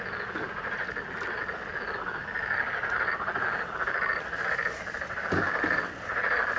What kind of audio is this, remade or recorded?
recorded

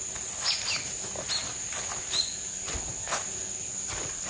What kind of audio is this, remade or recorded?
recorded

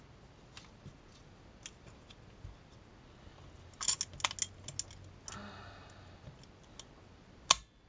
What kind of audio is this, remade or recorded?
recorded